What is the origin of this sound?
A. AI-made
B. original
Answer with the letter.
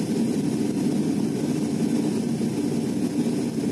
B